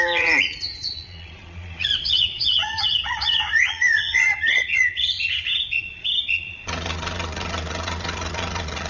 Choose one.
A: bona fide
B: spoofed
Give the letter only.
B